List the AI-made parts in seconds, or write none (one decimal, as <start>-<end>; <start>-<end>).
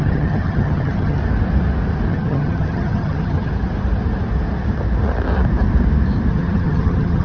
0.0-1.2; 2.1-3.5; 6.3-7.2